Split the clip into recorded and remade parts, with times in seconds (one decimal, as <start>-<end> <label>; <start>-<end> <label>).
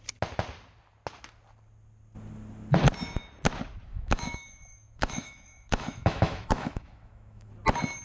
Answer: 0.0-3.9 recorded; 3.9-7.5 remade; 7.5-8.0 recorded